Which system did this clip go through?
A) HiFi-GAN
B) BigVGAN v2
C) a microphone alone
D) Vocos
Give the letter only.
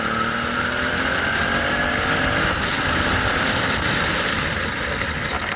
C